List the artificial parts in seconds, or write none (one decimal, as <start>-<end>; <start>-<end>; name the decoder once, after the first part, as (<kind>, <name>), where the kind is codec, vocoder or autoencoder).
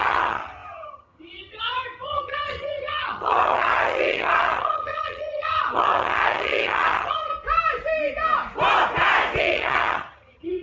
0.0-7.3 (vocoder, HiFi-GAN); 9.4-10.6